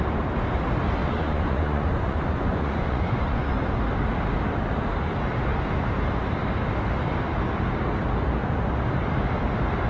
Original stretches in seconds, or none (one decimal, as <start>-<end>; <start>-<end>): 0.0-1.0; 3.8-9.9